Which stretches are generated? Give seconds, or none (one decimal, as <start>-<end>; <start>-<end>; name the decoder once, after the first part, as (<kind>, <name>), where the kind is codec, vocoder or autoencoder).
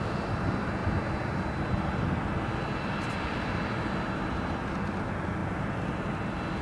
none